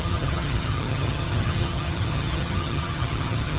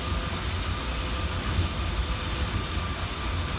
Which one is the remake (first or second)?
first